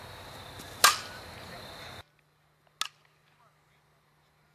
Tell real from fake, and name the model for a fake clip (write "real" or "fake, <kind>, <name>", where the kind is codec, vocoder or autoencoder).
real